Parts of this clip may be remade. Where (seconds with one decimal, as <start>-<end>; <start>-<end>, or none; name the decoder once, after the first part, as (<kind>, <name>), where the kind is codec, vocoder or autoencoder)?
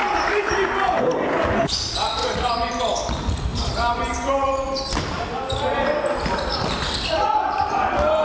0.0-0.5 (vocoder, BigVGAN v2)